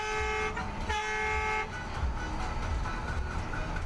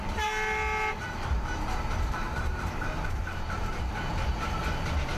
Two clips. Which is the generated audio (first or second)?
second